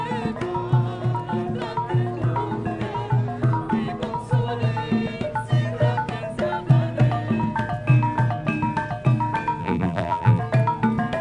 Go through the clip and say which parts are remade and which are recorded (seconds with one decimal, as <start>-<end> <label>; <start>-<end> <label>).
0.0-9.6 recorded; 9.6-10.4 remade; 10.4-11.2 recorded